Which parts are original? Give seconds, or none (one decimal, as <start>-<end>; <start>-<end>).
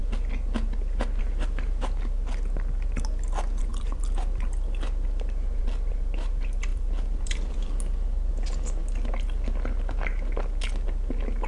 0.0-3.7; 4.5-6.7; 8.3-11.5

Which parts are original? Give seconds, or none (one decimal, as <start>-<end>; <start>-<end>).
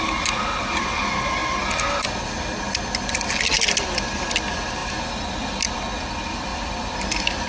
0.0-7.5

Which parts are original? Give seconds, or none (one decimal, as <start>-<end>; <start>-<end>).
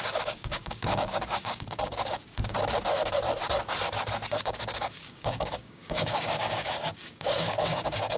2.6-4.3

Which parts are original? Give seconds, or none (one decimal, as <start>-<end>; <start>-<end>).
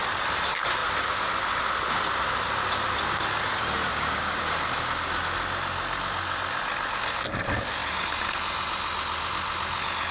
0.0-3.9; 4.4-10.1